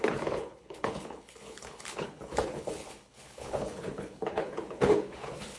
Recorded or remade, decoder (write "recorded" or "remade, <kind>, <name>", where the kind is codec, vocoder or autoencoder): remade, codec, HILCodec